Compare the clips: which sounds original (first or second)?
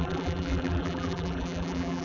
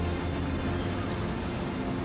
second